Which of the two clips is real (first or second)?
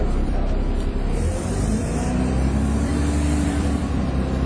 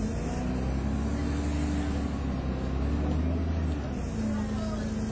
second